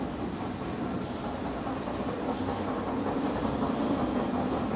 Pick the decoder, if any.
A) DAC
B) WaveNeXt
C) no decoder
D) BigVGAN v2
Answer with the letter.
C